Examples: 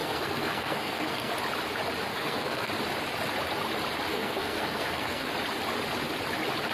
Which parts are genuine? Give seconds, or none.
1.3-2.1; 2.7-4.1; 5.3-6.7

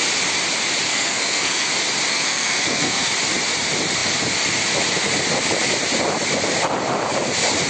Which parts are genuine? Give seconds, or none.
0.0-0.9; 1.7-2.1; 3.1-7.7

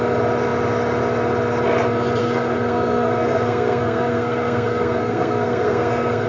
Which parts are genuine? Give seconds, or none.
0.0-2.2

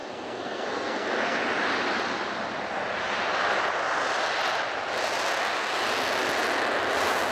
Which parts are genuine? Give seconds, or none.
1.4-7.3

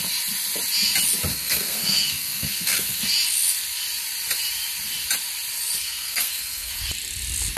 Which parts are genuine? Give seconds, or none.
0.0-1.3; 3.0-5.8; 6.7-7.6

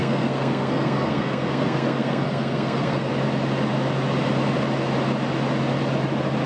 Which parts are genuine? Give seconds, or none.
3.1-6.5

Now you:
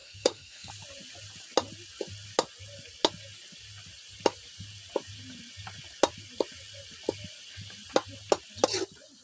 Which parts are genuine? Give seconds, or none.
0.7-9.2

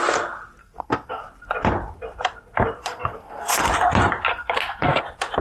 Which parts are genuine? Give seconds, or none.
0.0-0.6; 1.2-2.8; 3.7-4.3; 5.0-5.4